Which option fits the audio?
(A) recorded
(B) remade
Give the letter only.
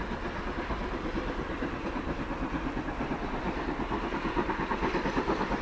A